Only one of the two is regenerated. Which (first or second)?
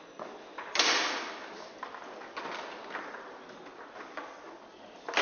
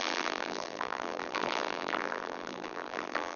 second